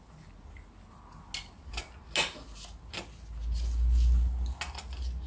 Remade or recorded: recorded